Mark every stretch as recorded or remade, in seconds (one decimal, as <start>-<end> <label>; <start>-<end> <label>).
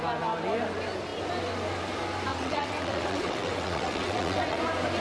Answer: 0.0-2.3 recorded; 2.3-4.6 remade; 4.6-5.0 recorded